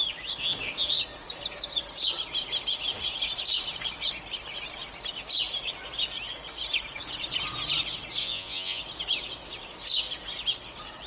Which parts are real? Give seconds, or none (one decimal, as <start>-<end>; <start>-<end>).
0.0-8.2; 8.8-11.1

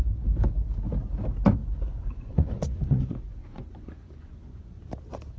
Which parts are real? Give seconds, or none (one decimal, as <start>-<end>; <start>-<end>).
0.0-1.6; 4.8-5.4